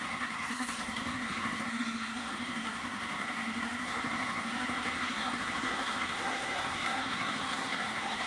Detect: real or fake fake